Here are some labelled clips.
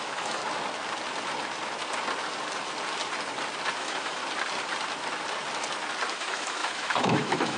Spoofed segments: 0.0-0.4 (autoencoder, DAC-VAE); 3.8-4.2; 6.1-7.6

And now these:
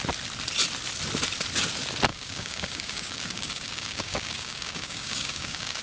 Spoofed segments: 2.1-5.8 (codec, DAC)

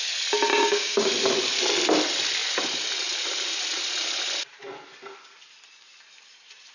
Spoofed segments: 0.5-1.1 (codec, DAC)

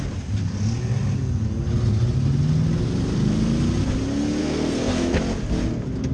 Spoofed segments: 4.4-5.2 (codec, SNAC)

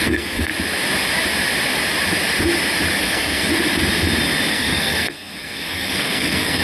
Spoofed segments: 0.0-0.5 (codec, SNAC); 3.0-3.5; 4.5-6.6